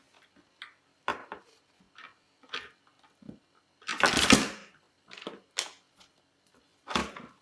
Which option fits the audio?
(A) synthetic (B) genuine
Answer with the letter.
B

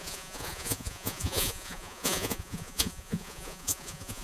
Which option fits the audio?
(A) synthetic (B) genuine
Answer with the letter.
A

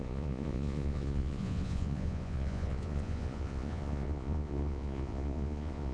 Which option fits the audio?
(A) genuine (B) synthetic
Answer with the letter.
B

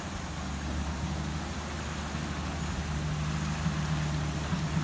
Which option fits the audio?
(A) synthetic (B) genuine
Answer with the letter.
B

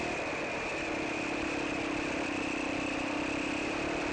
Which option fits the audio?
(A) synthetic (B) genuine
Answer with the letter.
B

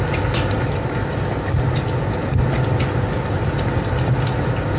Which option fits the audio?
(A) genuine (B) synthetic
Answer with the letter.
A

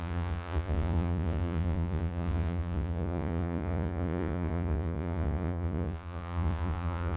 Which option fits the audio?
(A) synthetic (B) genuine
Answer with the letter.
A